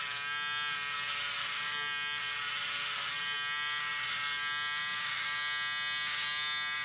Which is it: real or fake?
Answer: real